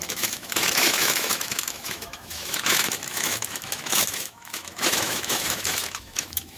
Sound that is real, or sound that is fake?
fake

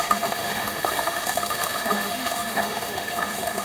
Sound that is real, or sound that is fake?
fake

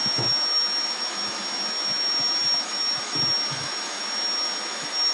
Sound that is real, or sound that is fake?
fake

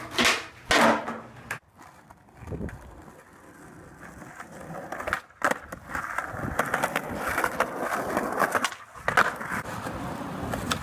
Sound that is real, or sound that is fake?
real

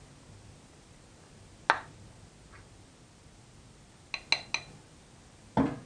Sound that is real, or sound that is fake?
real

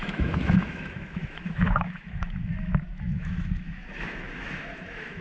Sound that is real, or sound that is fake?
fake